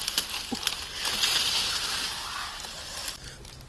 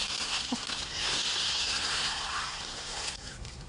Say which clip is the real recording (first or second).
first